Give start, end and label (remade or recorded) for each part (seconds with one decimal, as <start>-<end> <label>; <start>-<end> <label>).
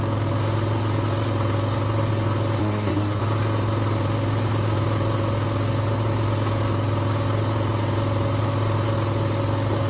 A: 0.0-2.6 recorded; 2.6-3.2 remade; 3.2-9.9 recorded